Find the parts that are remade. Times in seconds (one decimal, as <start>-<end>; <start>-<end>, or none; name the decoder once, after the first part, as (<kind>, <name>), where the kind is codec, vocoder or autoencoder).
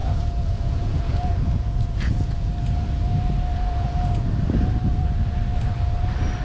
0.0-2.5 (vocoder, Vocos); 3.5-4.3